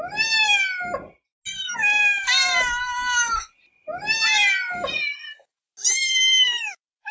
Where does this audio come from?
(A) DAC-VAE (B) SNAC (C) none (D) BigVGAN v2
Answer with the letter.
C